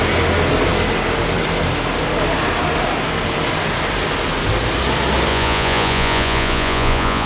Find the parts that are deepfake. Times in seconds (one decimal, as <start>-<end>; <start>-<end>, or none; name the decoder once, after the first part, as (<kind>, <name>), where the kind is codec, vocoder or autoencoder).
5.3-7.3 (vocoder, Vocos)